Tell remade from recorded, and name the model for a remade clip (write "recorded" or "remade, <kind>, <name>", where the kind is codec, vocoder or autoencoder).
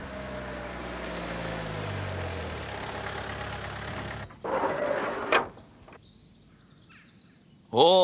recorded